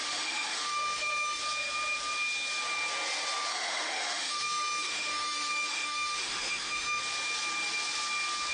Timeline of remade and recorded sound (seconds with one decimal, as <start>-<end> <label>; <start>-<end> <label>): 0.0-1.4 remade; 1.4-3.5 recorded; 3.5-7.0 remade; 7.0-8.5 recorded